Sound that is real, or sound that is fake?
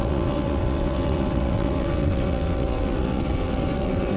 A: fake